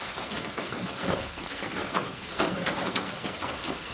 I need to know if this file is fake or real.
fake